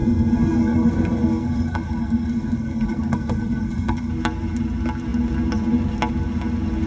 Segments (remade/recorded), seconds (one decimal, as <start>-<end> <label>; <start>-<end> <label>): 0.0-4.1 remade; 4.1-6.9 recorded